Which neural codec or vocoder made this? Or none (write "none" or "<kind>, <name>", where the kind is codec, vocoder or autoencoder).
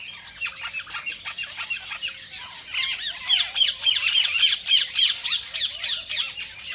none